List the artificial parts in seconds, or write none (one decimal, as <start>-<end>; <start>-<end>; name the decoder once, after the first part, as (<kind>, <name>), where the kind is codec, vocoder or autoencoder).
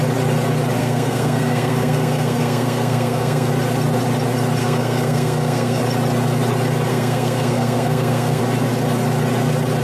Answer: 0.8-3.5 (codec, SNAC); 4.6-5.8; 6.9-8.4